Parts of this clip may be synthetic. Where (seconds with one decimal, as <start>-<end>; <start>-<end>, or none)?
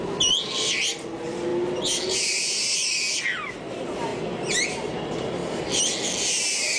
none